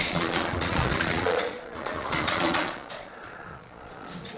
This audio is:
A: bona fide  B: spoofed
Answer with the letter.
B